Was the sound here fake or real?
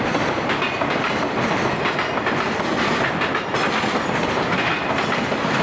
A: fake